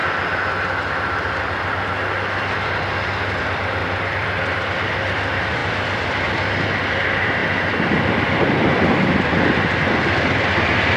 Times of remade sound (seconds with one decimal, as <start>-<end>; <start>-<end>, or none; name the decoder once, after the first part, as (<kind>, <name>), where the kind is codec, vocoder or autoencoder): 3.3-11.0 (vocoder, BigVGAN v2)